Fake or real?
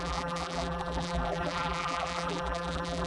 fake